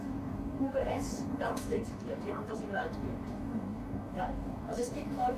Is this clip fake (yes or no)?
yes